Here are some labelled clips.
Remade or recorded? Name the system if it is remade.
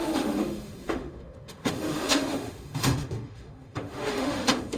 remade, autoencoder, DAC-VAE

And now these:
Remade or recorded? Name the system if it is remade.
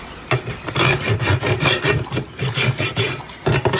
recorded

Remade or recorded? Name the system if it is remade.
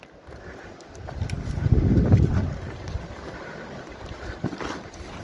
recorded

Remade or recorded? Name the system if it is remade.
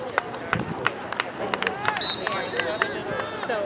recorded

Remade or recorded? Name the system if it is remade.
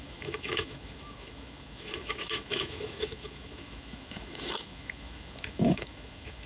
remade, autoencoder, DAC-VAE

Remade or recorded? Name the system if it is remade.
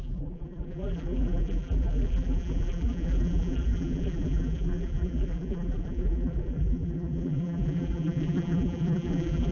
remade, vocoder, BigVGAN v2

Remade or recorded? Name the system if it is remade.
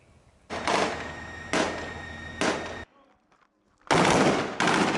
recorded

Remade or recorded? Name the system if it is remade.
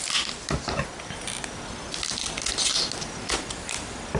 recorded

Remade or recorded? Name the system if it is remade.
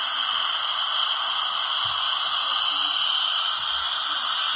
recorded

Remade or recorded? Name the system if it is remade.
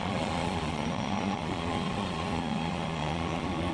remade, vocoder, Vocos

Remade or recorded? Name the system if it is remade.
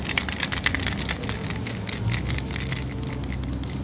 recorded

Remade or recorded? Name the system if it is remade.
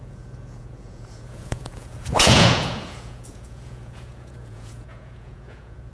remade, vocoder, Vocos